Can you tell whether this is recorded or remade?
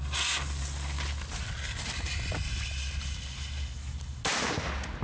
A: recorded